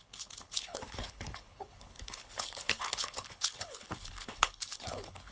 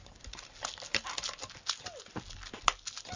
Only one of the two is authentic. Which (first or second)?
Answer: second